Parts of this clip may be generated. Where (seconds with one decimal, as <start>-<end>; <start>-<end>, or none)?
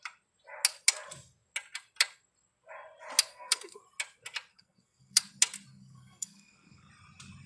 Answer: 3.3-3.8; 4.5-5.2; 5.7-6.9